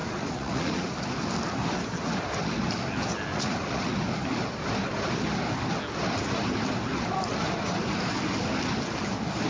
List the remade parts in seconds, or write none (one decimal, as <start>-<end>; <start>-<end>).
0.0-0.9; 3.3-3.9